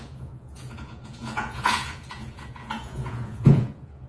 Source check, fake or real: fake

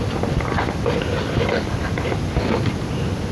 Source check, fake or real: real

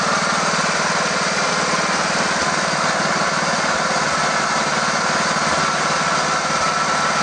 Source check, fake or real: real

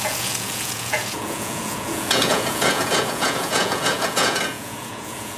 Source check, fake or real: fake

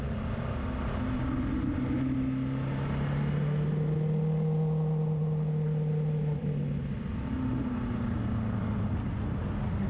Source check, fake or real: real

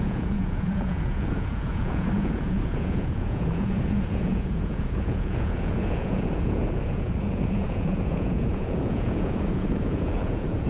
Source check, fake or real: fake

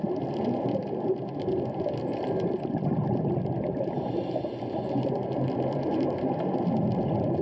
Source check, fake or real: real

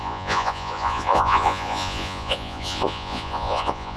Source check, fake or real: fake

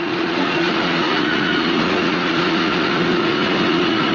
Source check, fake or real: fake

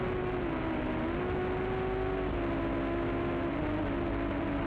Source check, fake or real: real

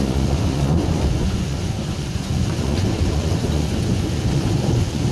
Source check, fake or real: fake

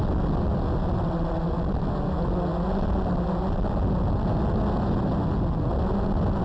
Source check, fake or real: real